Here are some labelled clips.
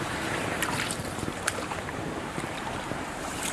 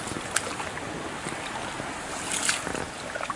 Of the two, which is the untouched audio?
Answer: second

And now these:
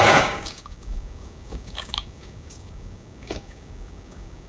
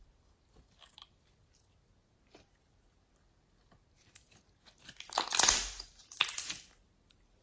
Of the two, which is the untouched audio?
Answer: second